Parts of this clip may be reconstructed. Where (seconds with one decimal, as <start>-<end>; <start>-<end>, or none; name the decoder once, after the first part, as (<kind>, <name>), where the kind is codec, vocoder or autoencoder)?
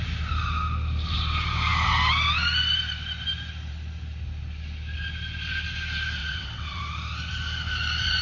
6.2-6.8 (vocoder, WaveNeXt)